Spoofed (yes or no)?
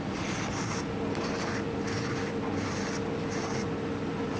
no